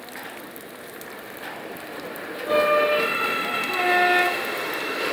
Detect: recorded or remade recorded